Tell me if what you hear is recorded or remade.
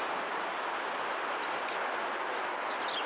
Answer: recorded